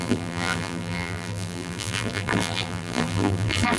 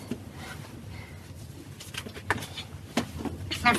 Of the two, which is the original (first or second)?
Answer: second